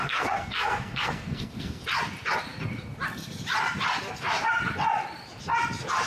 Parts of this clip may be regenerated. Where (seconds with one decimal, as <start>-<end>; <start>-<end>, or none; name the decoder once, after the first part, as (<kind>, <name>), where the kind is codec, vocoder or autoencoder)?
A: 0.0-1.8 (codec, SNAC)